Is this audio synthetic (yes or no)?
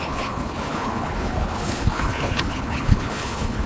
yes